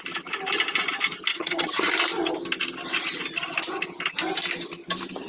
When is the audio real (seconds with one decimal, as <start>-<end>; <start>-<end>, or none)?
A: 0.0-1.3; 1.9-5.3